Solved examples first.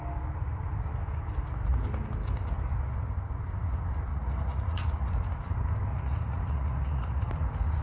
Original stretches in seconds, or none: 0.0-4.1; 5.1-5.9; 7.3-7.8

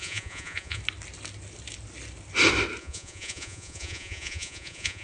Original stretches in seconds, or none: 0.8-2.8

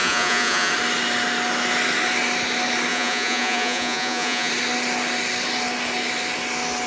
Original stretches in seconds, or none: 0.7-2.9; 4.5-6.9

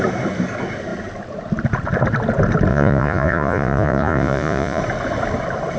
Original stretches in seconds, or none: 0.0-2.7; 4.8-5.8

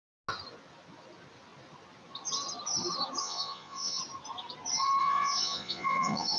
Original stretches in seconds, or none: 0.0-3.2; 4.0-5.0